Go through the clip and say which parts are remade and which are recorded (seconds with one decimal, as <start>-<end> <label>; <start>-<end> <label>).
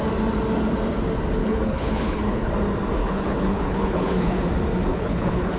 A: 0.0-1.4 recorded; 1.4-2.5 remade; 2.5-3.0 recorded; 3.0-4.5 remade; 4.5-4.9 recorded; 4.9-5.6 remade